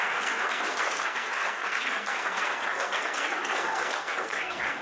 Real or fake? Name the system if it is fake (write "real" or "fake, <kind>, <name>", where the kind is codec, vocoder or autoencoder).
fake, codec, SNAC